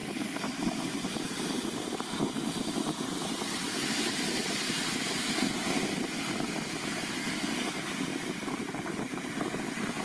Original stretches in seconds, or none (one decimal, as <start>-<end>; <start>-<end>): 4.8-8.1; 9.5-10.0